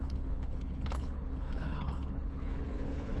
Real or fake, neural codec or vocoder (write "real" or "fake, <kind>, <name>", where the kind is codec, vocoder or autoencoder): fake, codec, HILCodec